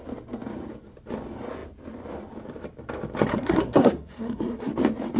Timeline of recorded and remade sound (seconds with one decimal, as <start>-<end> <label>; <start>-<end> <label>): 0.0-3.3 recorded; 3.3-4.7 remade; 4.7-5.2 recorded